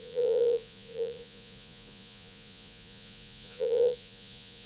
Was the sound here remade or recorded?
remade